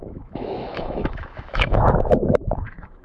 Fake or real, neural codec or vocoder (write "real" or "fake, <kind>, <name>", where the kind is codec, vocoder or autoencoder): fake, autoencoder, DAC-VAE